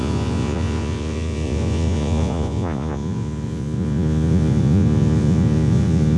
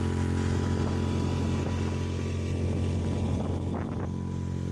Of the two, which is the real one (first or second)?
second